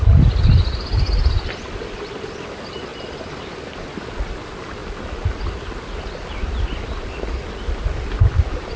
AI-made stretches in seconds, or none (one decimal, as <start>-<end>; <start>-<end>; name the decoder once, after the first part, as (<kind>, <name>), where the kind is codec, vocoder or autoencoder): none